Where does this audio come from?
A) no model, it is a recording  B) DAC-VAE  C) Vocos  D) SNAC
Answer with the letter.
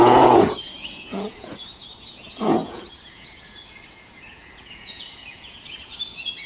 C